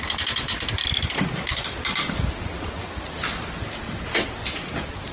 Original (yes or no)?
yes